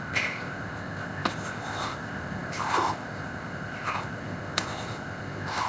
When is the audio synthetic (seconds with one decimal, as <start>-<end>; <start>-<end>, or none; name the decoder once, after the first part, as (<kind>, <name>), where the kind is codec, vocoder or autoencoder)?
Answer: 0.0-5.7 (codec, ZipCodec)